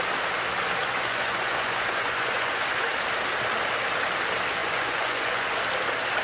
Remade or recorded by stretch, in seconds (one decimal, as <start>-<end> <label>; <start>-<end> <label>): 0.0-0.8 recorded; 0.8-2.9 remade; 2.9-4.6 recorded; 4.6-5.6 remade; 5.6-6.2 recorded